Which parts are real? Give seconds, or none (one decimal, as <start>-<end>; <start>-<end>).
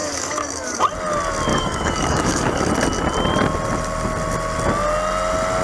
0.8-1.5; 2.7-5.6